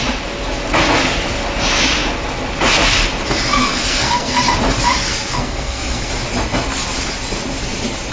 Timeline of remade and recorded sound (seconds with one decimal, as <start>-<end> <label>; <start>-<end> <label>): 0.0-3.6 recorded; 3.6-4.4 remade; 4.4-5.1 recorded; 5.1-6.1 remade; 6.1-8.1 recorded